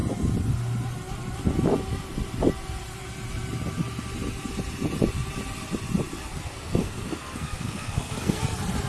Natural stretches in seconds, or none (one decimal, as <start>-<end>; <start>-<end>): 0.0-6.3; 8.4-8.9